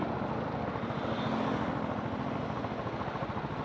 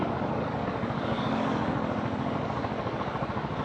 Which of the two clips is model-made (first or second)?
second